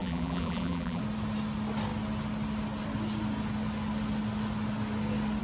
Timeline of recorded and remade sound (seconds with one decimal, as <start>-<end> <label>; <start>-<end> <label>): 0.0-1.0 remade; 1.0-5.4 recorded